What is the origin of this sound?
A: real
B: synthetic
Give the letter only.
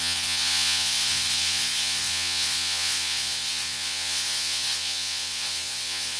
B